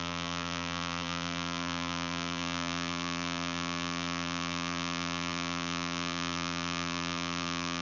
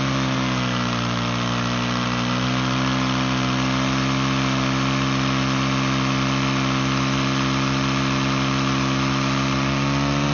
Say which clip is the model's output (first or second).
first